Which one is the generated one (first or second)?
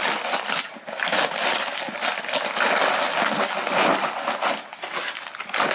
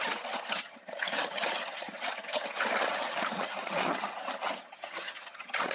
second